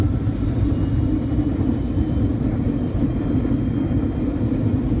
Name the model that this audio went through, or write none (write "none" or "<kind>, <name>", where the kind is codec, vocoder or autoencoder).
none